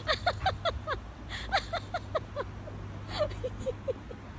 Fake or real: real